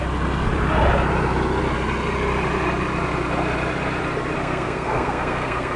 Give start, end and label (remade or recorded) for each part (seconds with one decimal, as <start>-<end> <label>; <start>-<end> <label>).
0.0-4.4 recorded; 4.4-5.8 remade